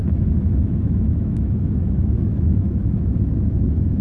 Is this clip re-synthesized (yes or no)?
yes